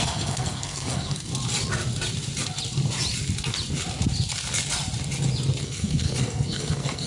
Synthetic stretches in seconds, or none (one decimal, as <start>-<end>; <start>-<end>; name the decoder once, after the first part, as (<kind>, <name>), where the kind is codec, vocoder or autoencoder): 0.0-1.3 (codec, SNAC); 5.6-7.1